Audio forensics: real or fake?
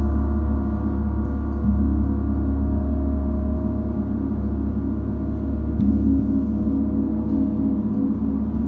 real